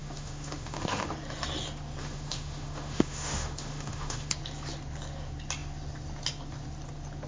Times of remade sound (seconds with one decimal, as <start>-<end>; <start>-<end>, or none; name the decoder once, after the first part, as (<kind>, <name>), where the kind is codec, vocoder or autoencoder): 0.0-1.1 (autoencoder, DAC-VAE); 2.0-4.3